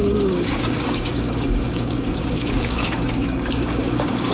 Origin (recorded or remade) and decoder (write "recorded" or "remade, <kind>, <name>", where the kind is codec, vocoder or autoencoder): remade, codec, DAC